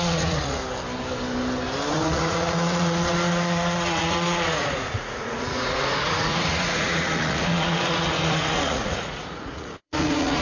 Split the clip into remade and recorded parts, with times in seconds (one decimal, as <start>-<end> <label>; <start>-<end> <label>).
0.0-0.6 remade; 0.6-1.9 recorded; 1.9-10.4 remade